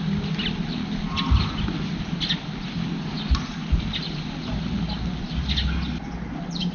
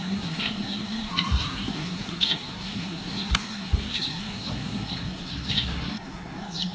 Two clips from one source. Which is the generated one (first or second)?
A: second